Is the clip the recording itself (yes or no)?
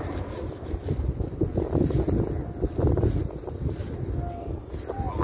yes